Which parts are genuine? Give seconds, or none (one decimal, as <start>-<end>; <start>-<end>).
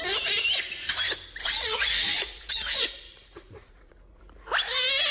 0.0-1.4; 4.2-5.1